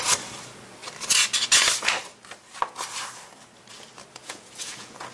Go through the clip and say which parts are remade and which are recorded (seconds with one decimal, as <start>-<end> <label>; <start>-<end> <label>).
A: 0.0-4.2 recorded; 4.2-5.1 remade